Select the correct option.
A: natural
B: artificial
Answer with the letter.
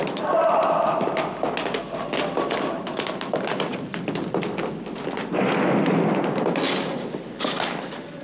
A